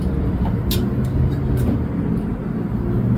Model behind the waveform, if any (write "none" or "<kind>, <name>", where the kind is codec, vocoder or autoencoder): none